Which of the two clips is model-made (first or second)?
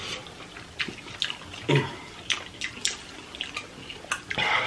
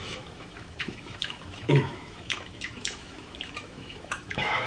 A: second